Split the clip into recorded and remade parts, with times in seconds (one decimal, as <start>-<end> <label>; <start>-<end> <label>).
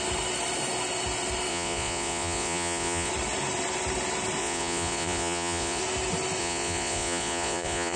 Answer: 0.0-1.5 recorded; 1.5-3.1 remade; 3.1-4.4 recorded; 4.4-5.8 remade; 5.8-6.4 recorded; 6.4-8.0 remade